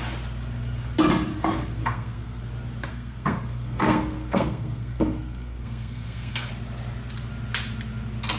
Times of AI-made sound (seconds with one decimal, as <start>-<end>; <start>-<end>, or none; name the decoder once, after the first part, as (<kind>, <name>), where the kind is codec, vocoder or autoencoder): 1.3-2.4 (codec, SNAC); 2.9-6.5